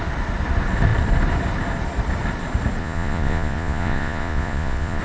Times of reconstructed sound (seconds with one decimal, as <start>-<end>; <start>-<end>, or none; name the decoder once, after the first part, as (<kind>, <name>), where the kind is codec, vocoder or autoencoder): 2.8-5.0 (vocoder, Vocos)